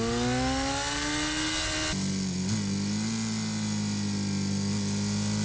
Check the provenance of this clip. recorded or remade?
recorded